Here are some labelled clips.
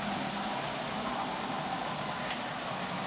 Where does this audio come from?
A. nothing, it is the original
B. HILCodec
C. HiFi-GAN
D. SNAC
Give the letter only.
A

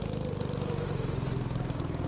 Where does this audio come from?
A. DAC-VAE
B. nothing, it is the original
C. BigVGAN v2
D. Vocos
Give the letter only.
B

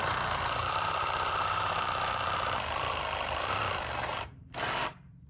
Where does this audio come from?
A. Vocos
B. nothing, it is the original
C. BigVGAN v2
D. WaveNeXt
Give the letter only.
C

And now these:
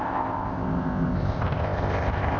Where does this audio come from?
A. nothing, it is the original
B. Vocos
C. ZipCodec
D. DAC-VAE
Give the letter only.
C